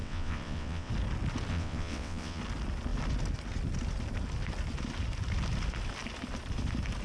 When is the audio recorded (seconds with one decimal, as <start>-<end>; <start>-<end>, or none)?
0.9-1.5; 2.4-7.0

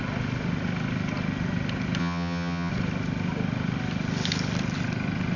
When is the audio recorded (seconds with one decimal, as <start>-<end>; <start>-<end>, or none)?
0.0-2.0; 2.7-5.4

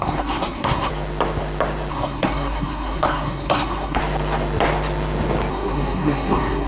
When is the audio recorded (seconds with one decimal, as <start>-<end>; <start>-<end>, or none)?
0.9-1.9; 4.0-5.5

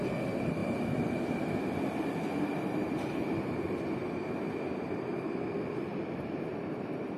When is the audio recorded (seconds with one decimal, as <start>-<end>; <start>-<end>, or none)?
0.0-0.6; 1.2-2.5; 3.1-7.2